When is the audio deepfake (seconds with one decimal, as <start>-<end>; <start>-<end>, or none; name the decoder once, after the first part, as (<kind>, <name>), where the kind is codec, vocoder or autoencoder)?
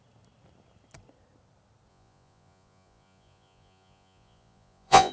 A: 1.9-5.1 (vocoder, Vocos)